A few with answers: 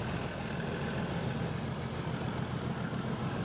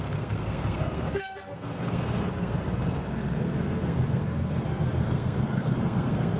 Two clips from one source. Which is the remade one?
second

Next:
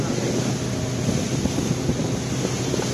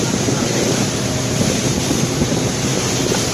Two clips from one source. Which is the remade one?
second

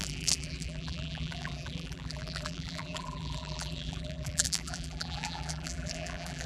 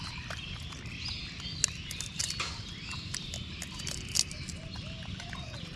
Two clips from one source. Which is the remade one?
first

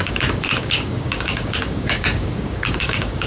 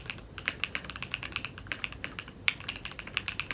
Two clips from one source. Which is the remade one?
first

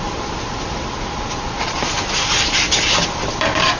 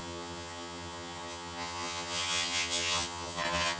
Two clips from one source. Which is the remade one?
second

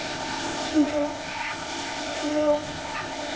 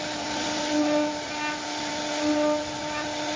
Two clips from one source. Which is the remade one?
first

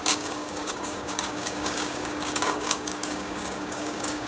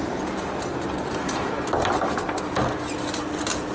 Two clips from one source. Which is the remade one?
first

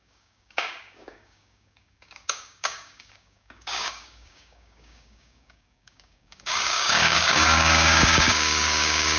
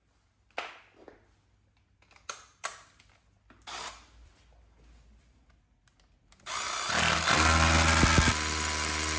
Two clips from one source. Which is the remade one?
first